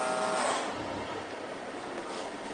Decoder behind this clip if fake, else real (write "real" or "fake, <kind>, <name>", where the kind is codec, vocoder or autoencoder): real